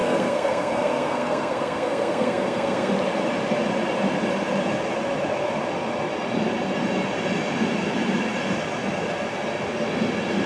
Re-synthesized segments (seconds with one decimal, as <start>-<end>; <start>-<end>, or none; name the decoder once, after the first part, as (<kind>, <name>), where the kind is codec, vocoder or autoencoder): 0.0-2.9 (codec, SNAC)